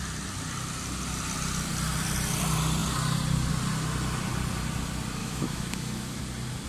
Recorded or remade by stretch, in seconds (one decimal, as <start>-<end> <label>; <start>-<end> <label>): 0.0-5.2 recorded; 5.2-6.2 remade; 6.2-6.7 recorded